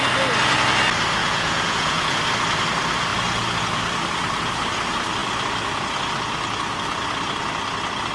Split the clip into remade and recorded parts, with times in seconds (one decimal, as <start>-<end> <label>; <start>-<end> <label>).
0.0-1.2 recorded; 1.2-2.2 remade; 2.2-8.1 recorded